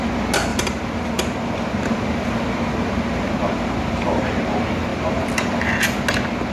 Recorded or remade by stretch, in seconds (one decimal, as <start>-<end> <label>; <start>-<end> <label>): 0.0-0.5 recorded; 0.5-4.4 remade; 4.4-4.9 recorded; 4.9-5.6 remade; 5.6-6.5 recorded